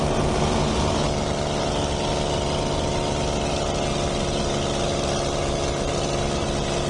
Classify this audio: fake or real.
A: real